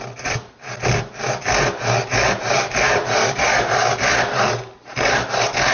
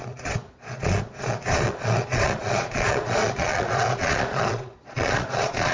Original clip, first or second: first